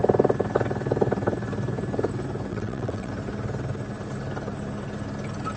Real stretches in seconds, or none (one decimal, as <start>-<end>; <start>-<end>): 0.0-2.5; 3.1-5.6